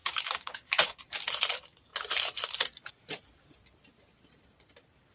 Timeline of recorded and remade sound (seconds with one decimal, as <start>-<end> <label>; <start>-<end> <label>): 0.0-1.0 remade; 1.0-5.1 recorded